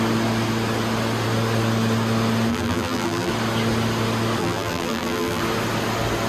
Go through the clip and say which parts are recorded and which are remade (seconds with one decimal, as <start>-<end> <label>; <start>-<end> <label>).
0.0-2.5 recorded; 2.5-3.3 remade; 3.3-4.4 recorded; 4.4-5.4 remade; 5.4-6.3 recorded